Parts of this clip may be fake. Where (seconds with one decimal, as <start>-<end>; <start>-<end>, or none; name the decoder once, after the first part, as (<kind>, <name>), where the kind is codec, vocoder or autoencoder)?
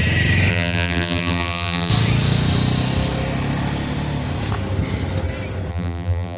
0.5-1.9 (vocoder, BigVGAN v2); 5.7-6.4